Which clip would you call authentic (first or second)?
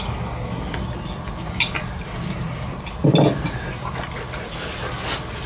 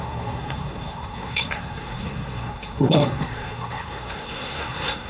first